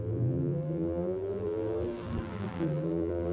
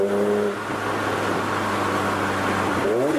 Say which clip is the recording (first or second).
second